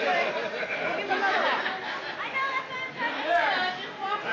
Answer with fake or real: real